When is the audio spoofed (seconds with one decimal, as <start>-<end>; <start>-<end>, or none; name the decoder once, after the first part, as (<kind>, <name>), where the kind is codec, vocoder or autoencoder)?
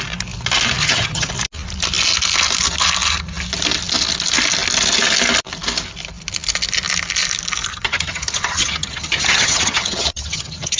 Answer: 0.8-1.3 (vocoder, HiFi-GAN); 7.7-10.8